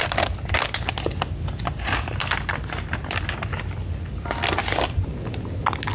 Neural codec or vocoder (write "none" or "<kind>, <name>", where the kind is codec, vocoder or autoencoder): none